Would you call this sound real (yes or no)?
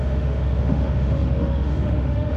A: no